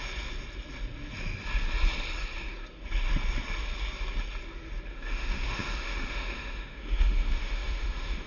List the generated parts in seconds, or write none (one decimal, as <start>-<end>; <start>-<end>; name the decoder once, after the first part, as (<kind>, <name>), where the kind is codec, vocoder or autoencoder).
4.9-8.3 (autoencoder, DAC-VAE)